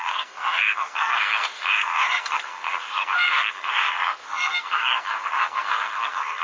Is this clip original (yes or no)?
no